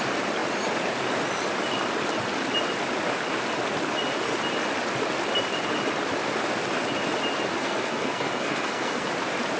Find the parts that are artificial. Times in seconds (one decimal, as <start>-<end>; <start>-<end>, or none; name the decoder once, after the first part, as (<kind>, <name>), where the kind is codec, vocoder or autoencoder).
7.6-9.1 (codec, SNAC)